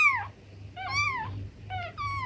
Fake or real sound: real